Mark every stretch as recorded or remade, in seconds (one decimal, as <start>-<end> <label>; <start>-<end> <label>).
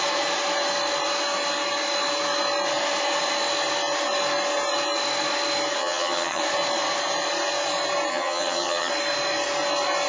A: 0.0-5.8 recorded; 5.8-6.4 remade; 6.4-8.1 recorded; 8.1-8.9 remade; 8.9-10.1 recorded